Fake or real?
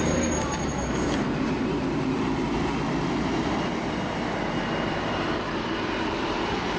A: fake